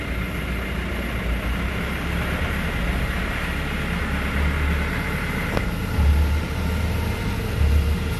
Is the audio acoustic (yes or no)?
yes